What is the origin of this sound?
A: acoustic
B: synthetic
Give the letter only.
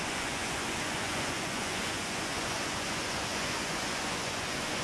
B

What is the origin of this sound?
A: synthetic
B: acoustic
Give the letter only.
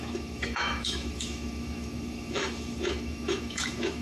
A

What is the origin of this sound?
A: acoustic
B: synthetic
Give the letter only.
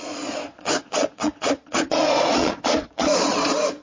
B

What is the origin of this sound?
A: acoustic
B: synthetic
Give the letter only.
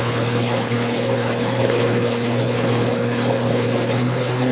B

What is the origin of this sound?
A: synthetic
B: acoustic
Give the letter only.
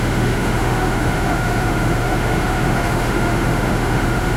A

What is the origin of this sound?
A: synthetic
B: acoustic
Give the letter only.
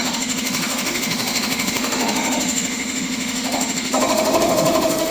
A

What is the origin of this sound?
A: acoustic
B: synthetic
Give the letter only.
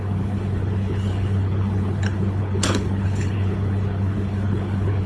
B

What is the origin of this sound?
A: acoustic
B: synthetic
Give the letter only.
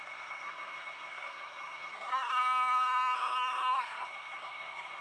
B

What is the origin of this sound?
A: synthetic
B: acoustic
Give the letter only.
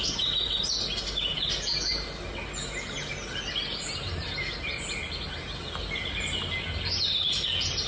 B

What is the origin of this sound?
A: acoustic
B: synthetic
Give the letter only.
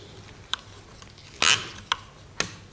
A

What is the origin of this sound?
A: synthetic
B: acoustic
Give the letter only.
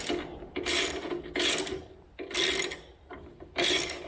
B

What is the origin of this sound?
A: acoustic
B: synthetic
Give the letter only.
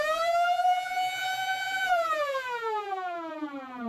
B